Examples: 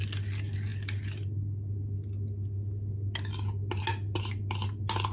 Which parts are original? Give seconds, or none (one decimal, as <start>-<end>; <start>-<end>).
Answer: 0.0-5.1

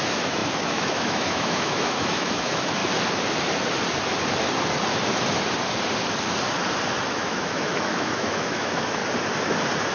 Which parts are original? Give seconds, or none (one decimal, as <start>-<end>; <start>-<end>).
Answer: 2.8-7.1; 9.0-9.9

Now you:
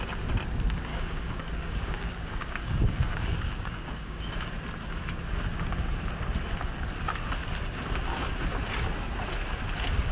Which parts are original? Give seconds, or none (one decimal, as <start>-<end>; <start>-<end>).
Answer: 0.0-0.9; 4.3-10.1

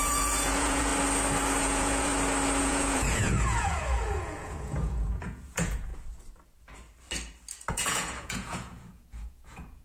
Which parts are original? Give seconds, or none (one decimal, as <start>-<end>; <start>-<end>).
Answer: 0.9-1.6; 2.1-2.6; 5.9-7.7